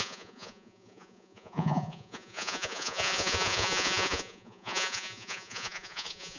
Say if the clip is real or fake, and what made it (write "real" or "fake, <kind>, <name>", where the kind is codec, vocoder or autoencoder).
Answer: fake, vocoder, Vocos